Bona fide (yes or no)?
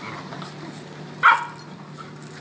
yes